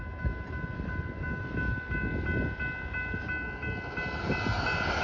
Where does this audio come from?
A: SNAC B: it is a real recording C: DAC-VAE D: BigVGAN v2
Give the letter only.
B